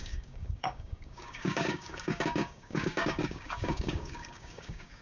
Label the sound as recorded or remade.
remade